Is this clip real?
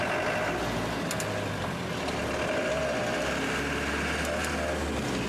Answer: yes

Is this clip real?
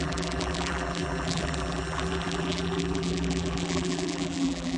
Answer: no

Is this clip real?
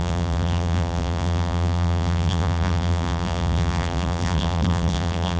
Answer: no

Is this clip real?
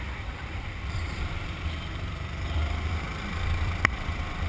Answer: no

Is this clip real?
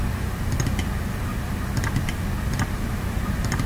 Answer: no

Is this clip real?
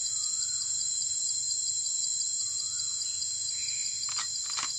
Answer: yes